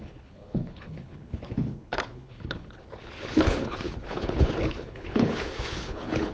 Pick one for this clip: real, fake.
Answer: fake